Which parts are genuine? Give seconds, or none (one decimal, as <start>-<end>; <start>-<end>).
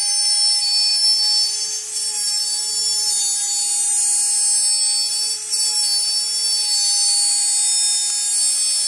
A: 0.0-8.9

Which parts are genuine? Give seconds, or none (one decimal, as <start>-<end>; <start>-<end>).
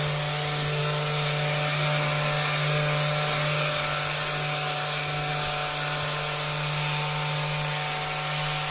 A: 0.0-8.7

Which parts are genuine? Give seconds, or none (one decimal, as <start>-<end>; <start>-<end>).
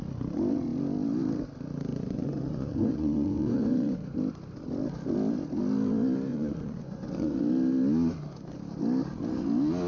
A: 0.0-1.9; 4.1-6.3; 7.4-9.9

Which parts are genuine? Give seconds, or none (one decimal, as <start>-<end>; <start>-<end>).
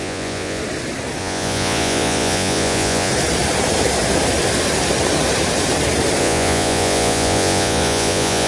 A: 0.6-1.2; 3.1-6.2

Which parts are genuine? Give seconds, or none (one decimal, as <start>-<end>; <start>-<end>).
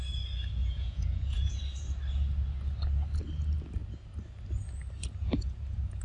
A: 0.0-0.6; 1.6-5.2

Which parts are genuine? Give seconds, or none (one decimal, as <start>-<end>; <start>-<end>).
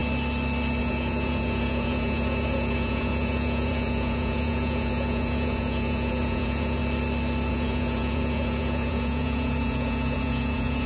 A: 0.0-0.8; 6.8-7.5